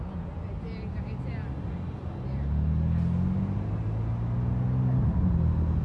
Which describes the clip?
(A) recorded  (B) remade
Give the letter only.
A